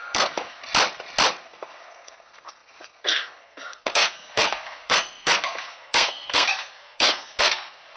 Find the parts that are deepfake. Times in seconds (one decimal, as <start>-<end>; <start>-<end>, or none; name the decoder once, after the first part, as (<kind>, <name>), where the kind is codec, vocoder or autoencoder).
0.0-0.6 (codec, SNAC); 1.4-8.0